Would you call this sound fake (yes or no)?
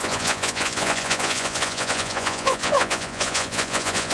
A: yes